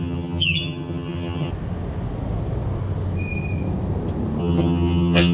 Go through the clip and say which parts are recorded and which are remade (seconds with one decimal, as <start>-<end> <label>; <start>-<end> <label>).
0.0-1.5 remade; 1.5-4.4 recorded; 4.4-5.3 remade